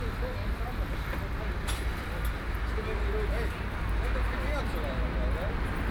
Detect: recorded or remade recorded